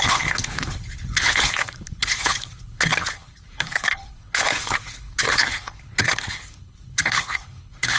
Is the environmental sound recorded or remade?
remade